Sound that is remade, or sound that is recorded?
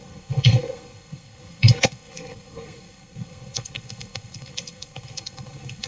remade